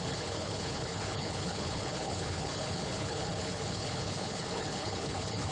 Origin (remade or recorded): remade